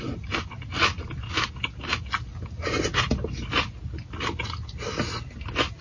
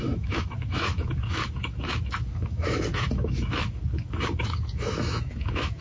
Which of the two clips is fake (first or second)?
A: second